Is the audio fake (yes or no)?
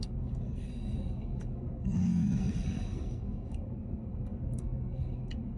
yes